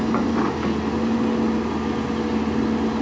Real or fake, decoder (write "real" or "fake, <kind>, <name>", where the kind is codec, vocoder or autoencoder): real